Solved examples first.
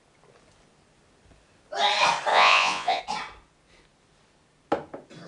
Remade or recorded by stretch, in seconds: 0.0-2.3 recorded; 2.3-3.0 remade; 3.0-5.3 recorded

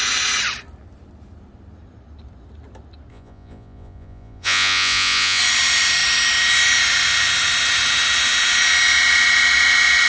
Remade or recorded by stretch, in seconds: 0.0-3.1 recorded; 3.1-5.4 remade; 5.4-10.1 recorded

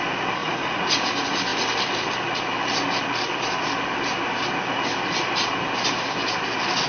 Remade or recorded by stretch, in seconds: 0.0-0.4 recorded; 0.4-0.9 remade; 0.9-6.9 recorded

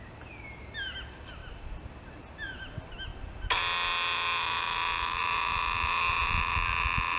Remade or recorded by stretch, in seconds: 0.0-7.2 recorded